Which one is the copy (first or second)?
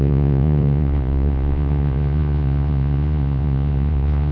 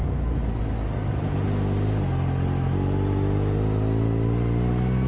first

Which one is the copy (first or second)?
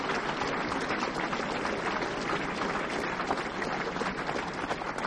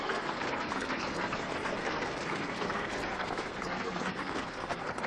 second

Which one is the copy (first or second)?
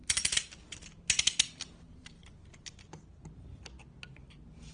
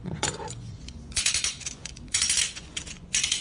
second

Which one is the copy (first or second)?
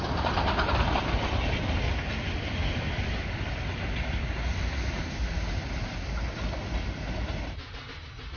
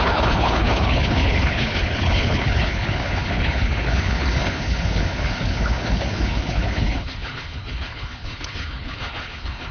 second